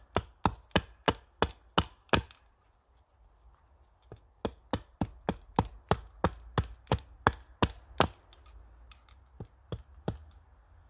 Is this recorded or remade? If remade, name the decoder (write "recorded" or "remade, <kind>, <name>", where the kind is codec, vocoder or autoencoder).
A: recorded